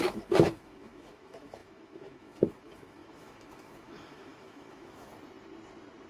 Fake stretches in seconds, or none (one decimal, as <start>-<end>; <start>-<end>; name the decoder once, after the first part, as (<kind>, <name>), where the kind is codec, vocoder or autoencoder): 0.0-5.1 (autoencoder, DAC-VAE)